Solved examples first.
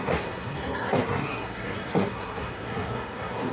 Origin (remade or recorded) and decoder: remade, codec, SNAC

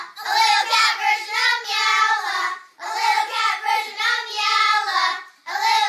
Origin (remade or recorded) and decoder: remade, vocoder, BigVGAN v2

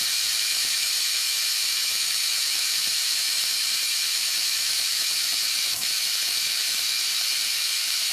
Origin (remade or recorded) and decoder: remade, autoencoder, DAC-VAE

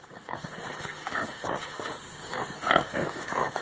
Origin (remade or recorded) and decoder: remade, autoencoder, DAC-VAE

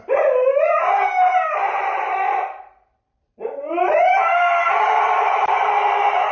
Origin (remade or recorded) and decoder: remade, vocoder, BigVGAN v2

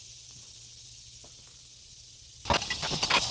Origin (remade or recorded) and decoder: recorded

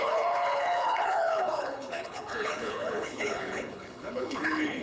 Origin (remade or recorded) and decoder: remade, codec, HILCodec